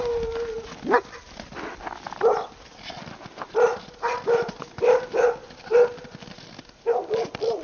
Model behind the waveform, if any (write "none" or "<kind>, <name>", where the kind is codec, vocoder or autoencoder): none